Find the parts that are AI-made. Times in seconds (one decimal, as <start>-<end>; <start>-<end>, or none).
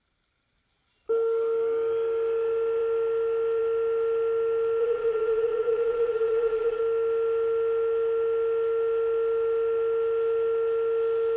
4.8-6.8